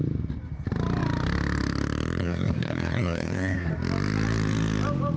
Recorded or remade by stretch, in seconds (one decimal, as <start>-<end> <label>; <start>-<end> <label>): 0.0-2.2 recorded; 2.2-3.7 remade; 3.7-5.2 recorded

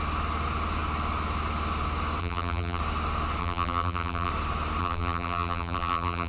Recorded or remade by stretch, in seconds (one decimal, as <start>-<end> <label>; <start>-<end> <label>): 0.0-2.2 recorded; 2.2-2.8 remade; 2.8-3.4 recorded; 3.4-4.3 remade; 4.3-4.8 recorded; 4.8-6.3 remade